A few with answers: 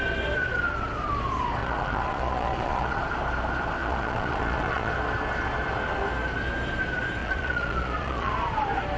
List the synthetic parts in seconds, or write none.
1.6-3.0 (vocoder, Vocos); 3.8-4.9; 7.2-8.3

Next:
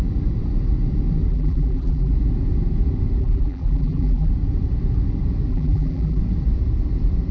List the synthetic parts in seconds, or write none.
1.3-2.1 (vocoder, BigVGAN v2); 3.2-4.3; 5.5-6.2

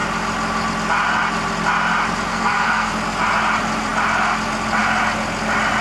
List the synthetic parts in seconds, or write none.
2.3-2.9 (codec, SNAC)

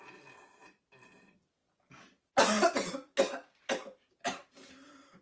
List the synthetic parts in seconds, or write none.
none

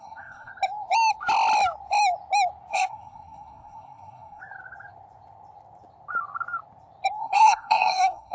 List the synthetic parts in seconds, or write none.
0.0-0.5 (codec, SNAC); 2.7-4.4; 7.2-8.3